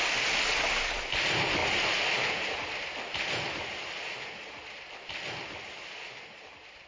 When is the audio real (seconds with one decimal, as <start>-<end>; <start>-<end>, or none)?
0.0-6.9